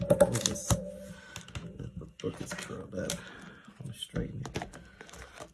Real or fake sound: real